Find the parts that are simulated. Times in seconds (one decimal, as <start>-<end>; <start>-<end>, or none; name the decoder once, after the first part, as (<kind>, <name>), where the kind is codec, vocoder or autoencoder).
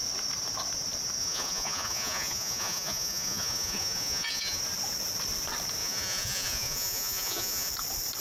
1.2-4.6 (vocoder, Vocos); 5.8-7.7